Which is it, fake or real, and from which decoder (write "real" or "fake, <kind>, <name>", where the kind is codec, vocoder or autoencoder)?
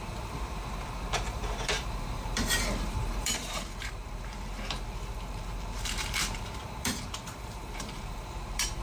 fake, vocoder, BigVGAN v2